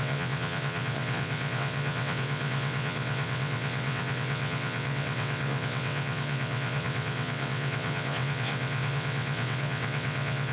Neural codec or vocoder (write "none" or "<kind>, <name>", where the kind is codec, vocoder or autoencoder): vocoder, WaveNeXt